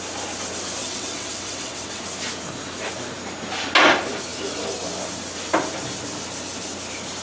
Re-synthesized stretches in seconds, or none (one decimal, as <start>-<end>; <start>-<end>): 0.8-2.0